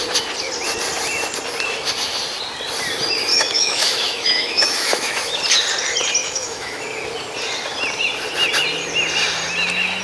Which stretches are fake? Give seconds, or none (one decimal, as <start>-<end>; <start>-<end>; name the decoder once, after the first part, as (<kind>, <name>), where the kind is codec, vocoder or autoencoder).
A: 3.3-5.4 (autoencoder, DAC-VAE); 6.2-6.8